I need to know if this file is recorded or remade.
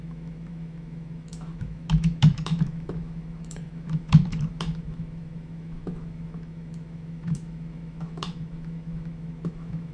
remade